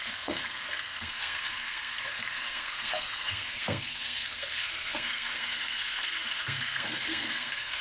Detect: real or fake fake